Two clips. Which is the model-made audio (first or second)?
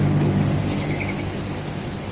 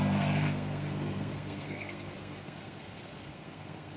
second